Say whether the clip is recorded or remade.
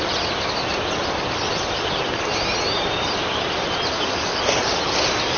recorded